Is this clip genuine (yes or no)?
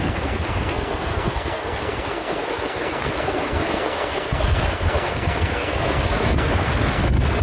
no